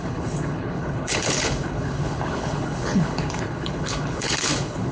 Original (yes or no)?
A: no